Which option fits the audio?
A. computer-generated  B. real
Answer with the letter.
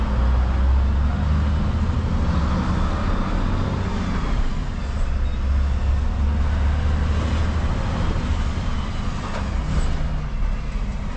B